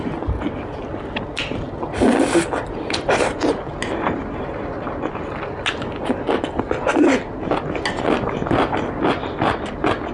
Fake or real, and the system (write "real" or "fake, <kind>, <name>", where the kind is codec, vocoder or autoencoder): real